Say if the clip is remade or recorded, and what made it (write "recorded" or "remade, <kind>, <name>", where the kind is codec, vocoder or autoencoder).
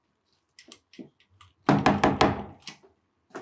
recorded